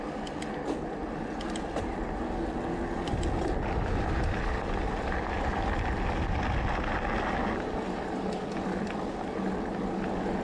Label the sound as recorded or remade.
recorded